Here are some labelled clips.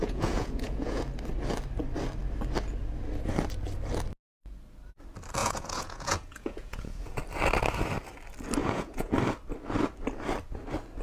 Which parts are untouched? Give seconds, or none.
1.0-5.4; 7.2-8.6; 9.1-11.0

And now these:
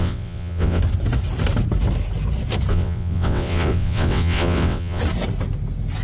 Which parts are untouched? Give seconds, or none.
0.8-2.7; 5.0-6.0

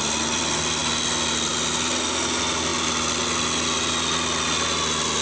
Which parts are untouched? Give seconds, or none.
0.0-5.2

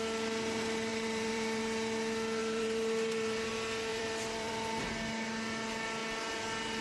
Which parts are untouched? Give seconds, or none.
0.0-0.9; 1.6-2.4; 3.5-3.9; 4.8-6.8

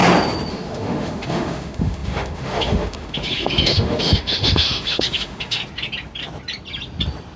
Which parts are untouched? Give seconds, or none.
0.0-0.5; 5.6-7.4

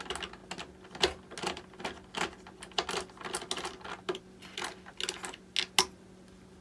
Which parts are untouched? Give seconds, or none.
0.0-6.6